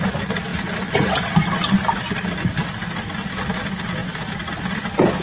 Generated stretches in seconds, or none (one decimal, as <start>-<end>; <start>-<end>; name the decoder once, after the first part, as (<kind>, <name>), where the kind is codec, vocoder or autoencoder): none